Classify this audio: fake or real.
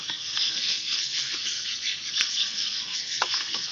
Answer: fake